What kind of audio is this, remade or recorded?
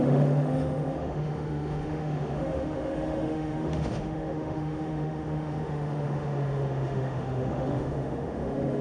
remade